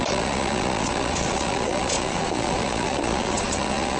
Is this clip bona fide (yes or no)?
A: no